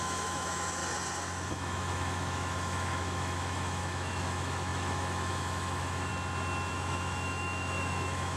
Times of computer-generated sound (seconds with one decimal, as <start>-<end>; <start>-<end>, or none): 0.0-0.8; 1.5-6.1; 6.7-8.4